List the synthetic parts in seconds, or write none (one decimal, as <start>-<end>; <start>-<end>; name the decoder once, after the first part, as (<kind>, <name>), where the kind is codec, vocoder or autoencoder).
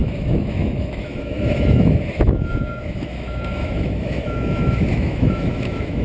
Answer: 0.0-6.0 (autoencoder, DAC-VAE)